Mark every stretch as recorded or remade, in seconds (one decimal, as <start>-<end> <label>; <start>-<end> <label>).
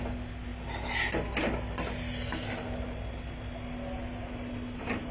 0.0-5.1 recorded